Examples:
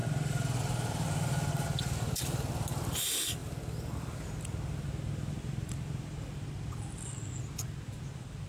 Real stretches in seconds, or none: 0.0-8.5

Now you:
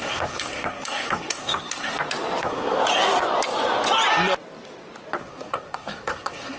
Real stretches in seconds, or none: 1.9-2.4; 2.8-5.2

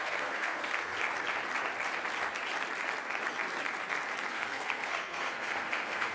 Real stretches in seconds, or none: 0.9-4.3